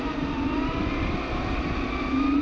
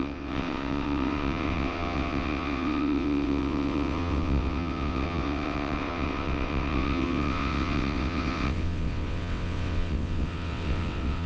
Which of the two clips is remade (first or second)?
second